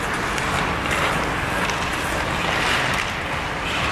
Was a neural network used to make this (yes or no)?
no